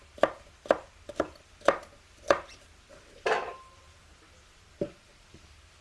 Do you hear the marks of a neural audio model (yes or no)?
no